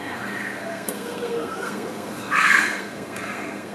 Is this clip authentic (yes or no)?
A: no